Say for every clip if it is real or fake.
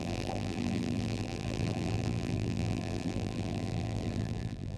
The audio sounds fake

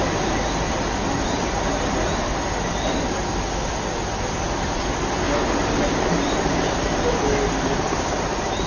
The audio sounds real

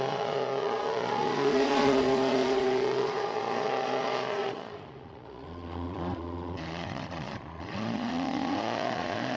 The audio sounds fake